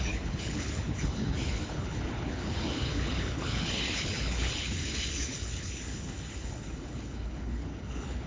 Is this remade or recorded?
remade